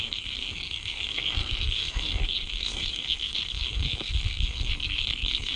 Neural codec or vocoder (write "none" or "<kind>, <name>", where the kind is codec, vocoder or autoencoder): codec, SNAC